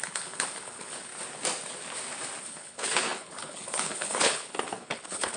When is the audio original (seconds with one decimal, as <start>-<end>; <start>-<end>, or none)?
1.1-2.4